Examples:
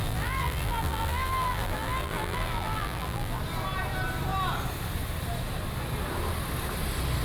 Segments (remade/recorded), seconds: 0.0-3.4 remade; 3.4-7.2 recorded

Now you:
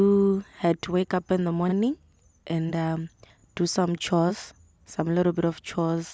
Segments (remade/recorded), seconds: 0.0-6.1 recorded

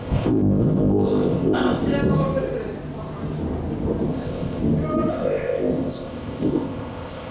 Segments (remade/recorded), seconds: 0.0-1.8 remade; 1.8-4.1 recorded; 4.1-4.6 remade; 4.6-5.1 recorded; 5.1-7.3 remade

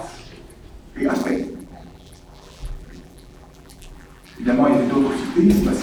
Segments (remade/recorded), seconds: 0.0-1.2 recorded; 1.2-4.4 remade; 4.4-5.8 recorded